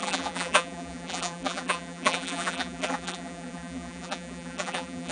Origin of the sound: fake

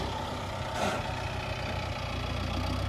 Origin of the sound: real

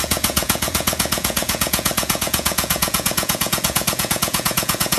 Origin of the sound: fake